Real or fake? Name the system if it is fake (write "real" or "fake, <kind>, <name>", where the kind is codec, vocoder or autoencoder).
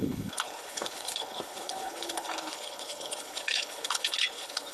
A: fake, codec, HILCodec